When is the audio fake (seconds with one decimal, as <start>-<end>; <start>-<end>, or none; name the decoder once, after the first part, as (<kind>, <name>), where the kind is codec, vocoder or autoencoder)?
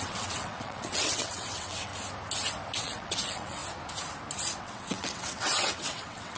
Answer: 0.0-1.9 (vocoder, WaveNeXt); 2.8-3.6; 4.6-6.4